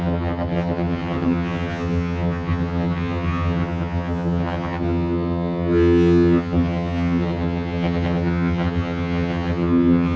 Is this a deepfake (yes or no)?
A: yes